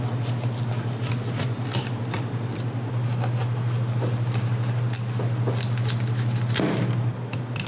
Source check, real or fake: real